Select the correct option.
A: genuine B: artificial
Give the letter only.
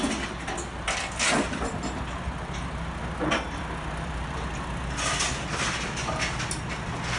A